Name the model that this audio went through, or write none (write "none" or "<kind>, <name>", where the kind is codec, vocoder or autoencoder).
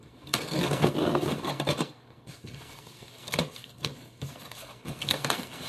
codec, SNAC